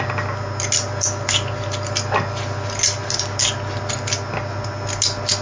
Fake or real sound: real